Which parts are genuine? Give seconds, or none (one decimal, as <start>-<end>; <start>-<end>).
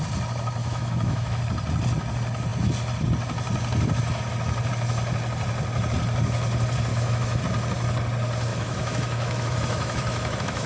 0.0-0.6; 1.4-6.9; 7.4-8.5